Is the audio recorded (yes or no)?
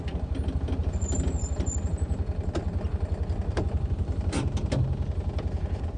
yes